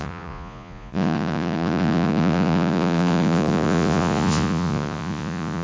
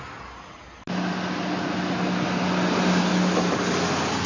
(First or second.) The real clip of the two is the second